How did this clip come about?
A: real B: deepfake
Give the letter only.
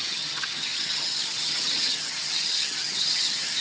B